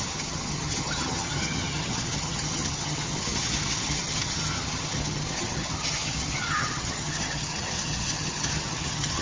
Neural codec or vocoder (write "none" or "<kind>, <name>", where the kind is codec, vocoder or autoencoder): vocoder, HiFi-GAN